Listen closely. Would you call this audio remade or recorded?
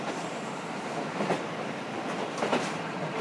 remade